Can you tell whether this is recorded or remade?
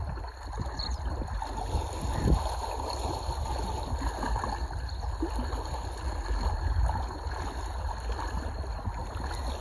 recorded